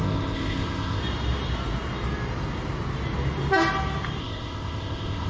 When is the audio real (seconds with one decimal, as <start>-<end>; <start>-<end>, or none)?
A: 1.0-4.2